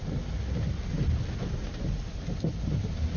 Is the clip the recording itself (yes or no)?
yes